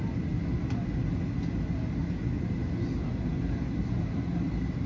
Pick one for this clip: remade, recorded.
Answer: recorded